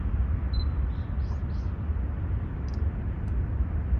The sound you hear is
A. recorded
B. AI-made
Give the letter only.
A